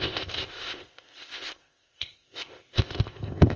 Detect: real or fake fake